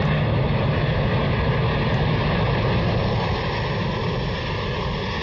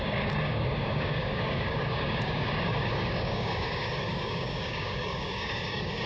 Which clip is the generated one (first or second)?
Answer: second